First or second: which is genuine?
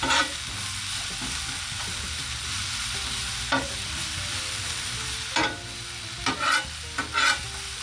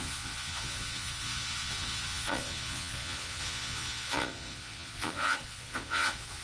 first